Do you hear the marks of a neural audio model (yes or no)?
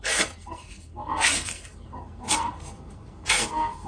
yes